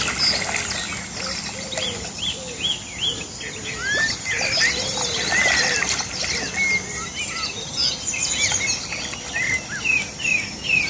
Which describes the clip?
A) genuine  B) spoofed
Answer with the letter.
A